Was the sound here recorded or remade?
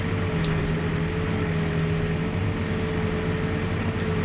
recorded